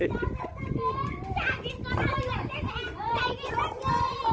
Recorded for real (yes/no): yes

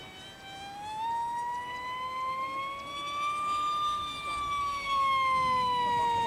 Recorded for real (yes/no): yes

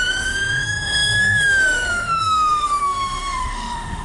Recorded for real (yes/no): no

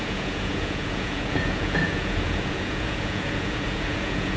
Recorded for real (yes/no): no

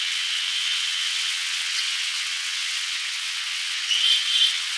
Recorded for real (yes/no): no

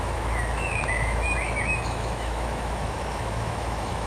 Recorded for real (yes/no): no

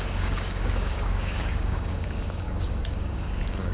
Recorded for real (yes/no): no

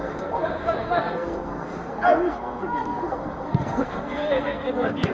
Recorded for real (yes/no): no